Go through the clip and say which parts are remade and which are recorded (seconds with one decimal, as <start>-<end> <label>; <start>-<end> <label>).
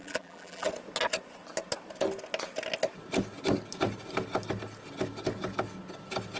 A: 0.0-0.7 remade; 0.7-6.4 recorded